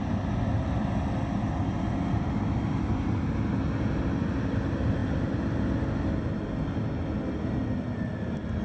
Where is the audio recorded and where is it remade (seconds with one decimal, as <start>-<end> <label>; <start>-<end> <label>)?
0.0-8.6 recorded